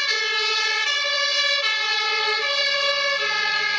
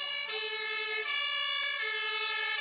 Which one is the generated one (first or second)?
first